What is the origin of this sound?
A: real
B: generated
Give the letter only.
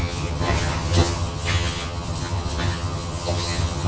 B